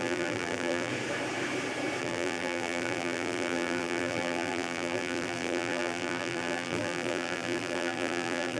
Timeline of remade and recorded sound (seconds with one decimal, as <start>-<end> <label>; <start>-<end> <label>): 0.0-0.9 remade; 0.9-2.0 recorded; 2.0-8.6 remade